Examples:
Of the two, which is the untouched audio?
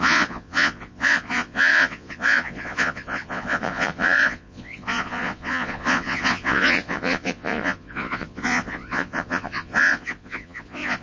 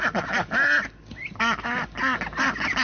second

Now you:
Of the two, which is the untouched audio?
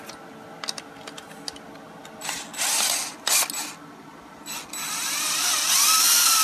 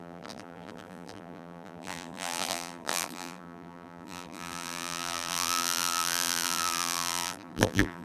first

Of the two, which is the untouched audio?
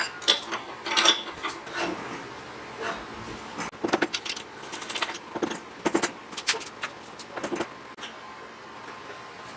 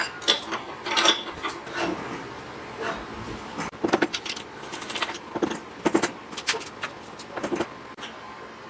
first